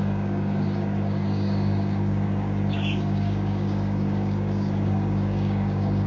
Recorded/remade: remade